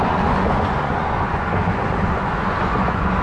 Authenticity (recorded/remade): remade